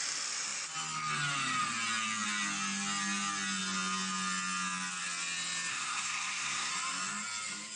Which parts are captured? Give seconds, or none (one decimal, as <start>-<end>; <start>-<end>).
0.0-5.7; 6.7-7.8